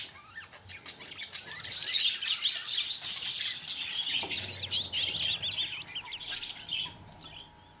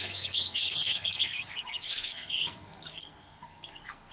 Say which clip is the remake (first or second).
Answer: second